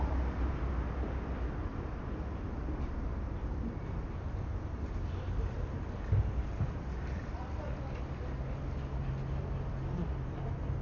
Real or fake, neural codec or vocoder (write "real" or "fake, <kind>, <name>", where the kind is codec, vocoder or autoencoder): real